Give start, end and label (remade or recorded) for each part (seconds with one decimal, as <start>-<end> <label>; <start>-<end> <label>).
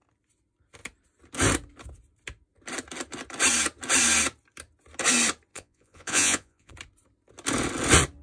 0.0-5.5 recorded; 5.5-6.7 remade; 6.7-8.2 recorded